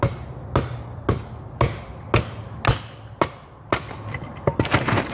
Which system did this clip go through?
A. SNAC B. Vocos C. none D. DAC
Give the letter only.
C